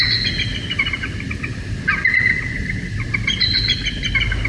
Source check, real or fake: real